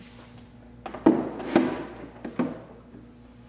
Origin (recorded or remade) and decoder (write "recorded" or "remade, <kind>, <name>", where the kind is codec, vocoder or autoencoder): recorded